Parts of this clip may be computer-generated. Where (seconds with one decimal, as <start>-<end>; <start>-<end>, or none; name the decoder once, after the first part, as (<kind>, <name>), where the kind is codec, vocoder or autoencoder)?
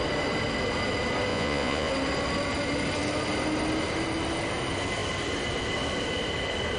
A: 1.3-1.9 (vocoder, Vocos)